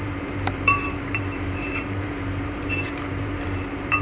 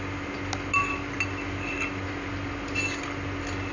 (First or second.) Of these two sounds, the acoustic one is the second